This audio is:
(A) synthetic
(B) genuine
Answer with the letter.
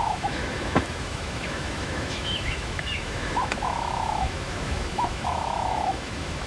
A